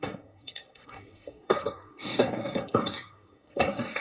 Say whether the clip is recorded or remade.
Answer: remade